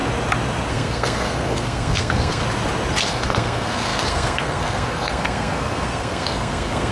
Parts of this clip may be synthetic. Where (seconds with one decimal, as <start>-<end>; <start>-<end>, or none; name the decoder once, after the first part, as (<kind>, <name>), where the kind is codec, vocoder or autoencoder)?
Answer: 0.7-2.4 (codec, SNAC); 3.0-6.9